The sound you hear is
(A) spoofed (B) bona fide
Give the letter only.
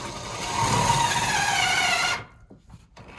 B